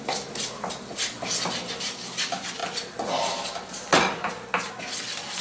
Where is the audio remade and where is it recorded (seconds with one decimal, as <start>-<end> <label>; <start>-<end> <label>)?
0.0-5.4 recorded